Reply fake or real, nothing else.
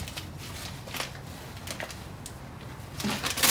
real